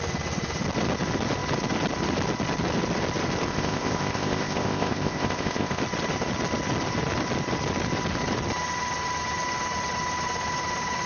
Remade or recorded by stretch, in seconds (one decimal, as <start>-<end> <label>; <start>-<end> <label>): 0.0-3.5 recorded; 3.5-5.8 remade; 5.8-11.1 recorded